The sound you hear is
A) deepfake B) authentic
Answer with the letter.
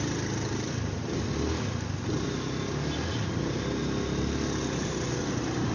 B